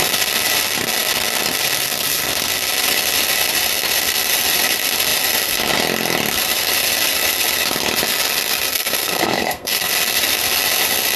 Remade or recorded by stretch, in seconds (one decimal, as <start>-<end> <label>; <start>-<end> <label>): 0.0-8.7 recorded; 8.7-9.9 remade; 9.9-11.2 recorded